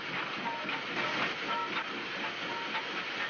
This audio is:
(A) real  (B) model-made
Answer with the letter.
A